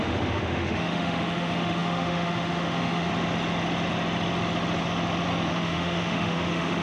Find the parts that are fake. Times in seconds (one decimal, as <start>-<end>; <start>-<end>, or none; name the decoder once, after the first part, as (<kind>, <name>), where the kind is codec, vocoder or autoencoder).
0.0-3.1 (autoencoder, DAC-VAE); 5.5-6.8